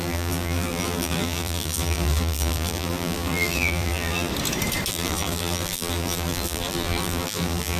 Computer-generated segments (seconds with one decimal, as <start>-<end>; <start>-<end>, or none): 0.0-4.3; 4.9-7.8